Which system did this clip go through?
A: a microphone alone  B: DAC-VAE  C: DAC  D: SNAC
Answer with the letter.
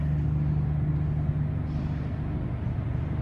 A